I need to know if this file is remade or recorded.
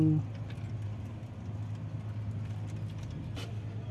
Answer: recorded